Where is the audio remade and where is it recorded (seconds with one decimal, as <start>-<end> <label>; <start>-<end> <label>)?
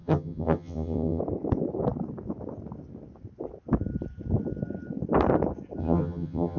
0.0-1.2 remade; 1.2-5.8 recorded; 5.8-6.6 remade